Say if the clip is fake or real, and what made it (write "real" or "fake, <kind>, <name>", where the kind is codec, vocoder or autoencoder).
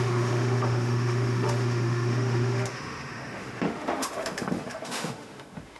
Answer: fake, autoencoder, DAC-VAE